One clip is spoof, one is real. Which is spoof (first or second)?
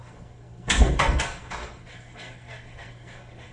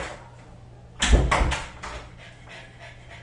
first